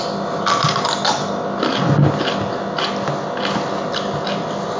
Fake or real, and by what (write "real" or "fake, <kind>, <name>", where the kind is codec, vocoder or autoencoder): real